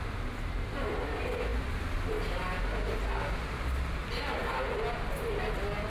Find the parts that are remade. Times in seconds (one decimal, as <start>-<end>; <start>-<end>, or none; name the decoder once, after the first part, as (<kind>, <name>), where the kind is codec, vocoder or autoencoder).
none